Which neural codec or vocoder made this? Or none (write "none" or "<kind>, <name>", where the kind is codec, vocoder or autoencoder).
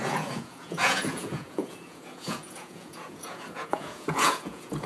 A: vocoder, Vocos